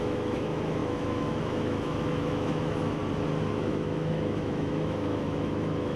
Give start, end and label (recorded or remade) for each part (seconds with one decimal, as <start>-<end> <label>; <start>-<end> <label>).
0.0-3.0 remade; 3.0-3.5 recorded; 3.5-6.0 remade